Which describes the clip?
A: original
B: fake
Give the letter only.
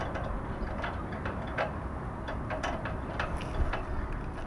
A